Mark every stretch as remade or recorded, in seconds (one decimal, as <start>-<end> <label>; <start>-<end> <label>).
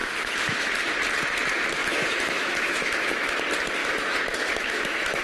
0.0-0.7 remade; 0.7-1.8 recorded; 1.8-3.4 remade; 3.4-3.8 recorded; 3.8-5.2 remade